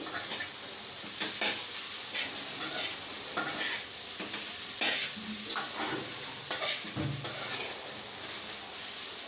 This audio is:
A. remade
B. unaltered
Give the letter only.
B